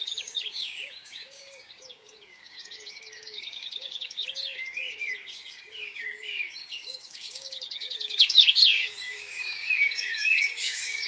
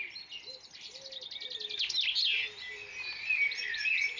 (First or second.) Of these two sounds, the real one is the second